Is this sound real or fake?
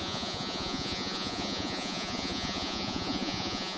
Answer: fake